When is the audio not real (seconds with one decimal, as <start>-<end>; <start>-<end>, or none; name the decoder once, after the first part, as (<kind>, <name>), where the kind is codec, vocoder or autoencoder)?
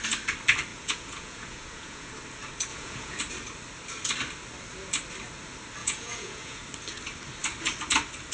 0.7-2.1 (vocoder, Vocos); 2.7-3.2; 5.8-6.6